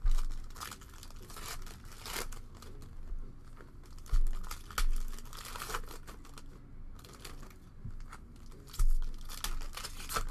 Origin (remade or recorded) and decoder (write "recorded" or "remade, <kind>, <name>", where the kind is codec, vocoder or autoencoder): recorded